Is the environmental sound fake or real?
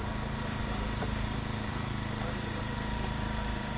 fake